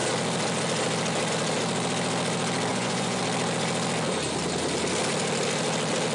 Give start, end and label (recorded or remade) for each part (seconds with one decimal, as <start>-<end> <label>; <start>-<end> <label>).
0.0-2.7 recorded; 2.7-3.2 remade; 3.2-6.1 recorded